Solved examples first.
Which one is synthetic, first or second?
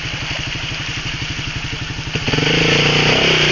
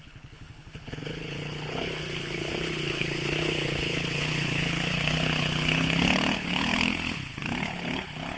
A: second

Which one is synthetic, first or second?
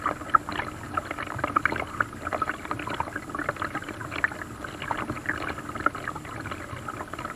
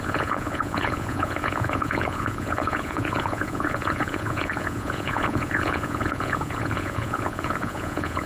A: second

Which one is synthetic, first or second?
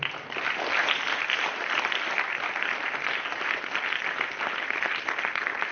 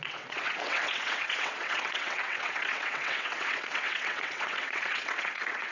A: second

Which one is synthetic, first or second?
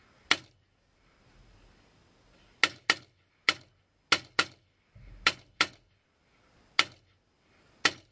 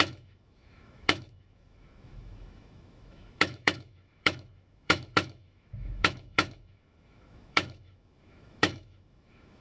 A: second